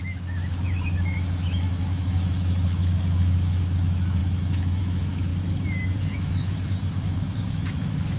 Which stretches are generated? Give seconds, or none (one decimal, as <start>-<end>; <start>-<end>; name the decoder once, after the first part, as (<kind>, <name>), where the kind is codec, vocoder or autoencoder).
0.0-5.3 (autoencoder, DAC-VAE); 6.0-8.2